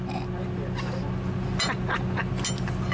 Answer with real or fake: real